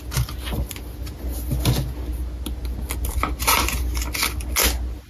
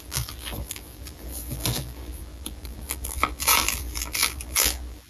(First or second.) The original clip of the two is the first